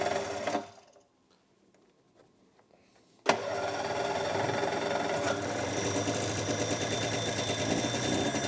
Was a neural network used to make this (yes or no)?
no